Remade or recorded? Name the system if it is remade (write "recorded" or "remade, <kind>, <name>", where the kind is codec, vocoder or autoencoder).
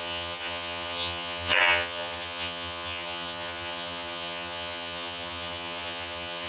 remade, vocoder, HiFi-GAN